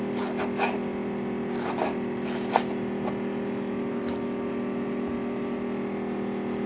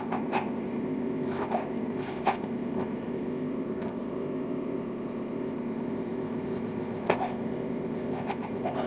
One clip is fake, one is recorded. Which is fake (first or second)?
second